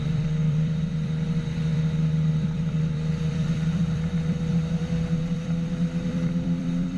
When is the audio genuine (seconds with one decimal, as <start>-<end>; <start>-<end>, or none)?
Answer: none